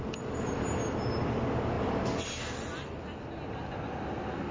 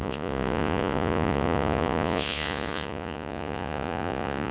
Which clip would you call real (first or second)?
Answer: first